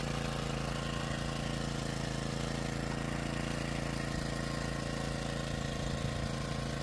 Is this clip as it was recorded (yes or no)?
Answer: yes